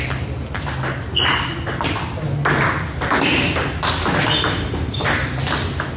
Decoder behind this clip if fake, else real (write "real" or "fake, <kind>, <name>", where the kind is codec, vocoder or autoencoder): real